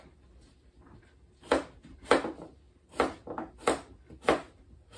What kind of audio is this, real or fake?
real